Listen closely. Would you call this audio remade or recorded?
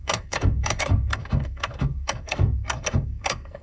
remade